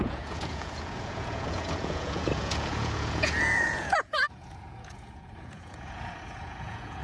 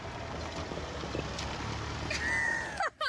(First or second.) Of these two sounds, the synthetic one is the first